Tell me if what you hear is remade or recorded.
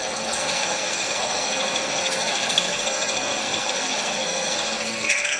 remade